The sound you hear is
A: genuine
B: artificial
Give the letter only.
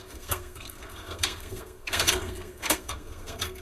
B